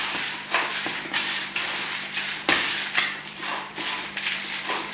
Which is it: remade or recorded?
remade